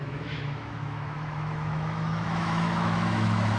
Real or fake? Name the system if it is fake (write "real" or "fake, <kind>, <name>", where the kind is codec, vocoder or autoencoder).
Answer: fake, autoencoder, DAC-VAE